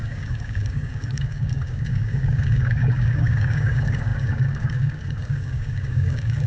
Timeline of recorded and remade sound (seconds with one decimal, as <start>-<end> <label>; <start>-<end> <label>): 0.0-6.5 remade